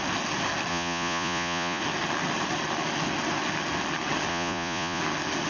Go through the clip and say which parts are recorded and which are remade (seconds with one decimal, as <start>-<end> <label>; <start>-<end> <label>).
0.0-0.7 recorded; 0.7-1.8 remade; 1.8-4.3 recorded; 4.3-5.0 remade; 5.0-5.5 recorded

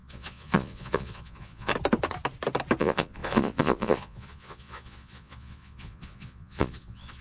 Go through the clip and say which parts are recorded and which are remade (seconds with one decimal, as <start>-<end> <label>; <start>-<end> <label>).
0.0-1.7 remade; 1.7-2.8 recorded; 2.8-7.2 remade